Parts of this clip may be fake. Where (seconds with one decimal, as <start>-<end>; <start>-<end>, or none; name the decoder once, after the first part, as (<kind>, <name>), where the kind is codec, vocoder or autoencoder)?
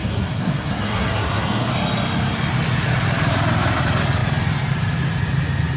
0.0-1.7 (codec, SNAC)